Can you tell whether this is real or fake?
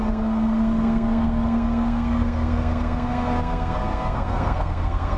fake